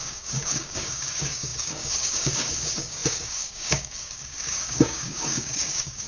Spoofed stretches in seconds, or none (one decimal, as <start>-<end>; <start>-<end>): 0.0-6.1